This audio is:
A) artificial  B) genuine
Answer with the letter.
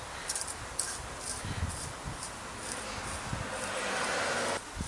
B